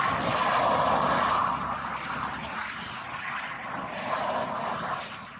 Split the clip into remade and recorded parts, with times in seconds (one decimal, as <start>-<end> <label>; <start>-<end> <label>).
0.0-5.4 remade